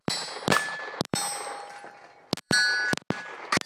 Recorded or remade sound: recorded